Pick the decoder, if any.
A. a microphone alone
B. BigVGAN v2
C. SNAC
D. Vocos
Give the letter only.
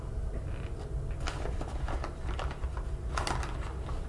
A